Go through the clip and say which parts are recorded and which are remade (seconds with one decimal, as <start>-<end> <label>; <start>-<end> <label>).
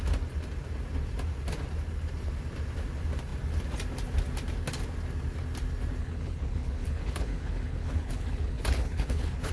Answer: 0.0-6.0 recorded; 6.0-9.5 remade